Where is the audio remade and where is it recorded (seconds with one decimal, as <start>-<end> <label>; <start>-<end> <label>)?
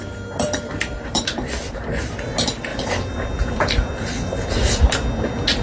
0.0-1.2 remade; 1.2-2.7 recorded; 2.7-3.9 remade; 3.9-5.6 recorded